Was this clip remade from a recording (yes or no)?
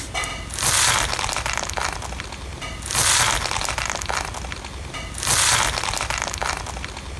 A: no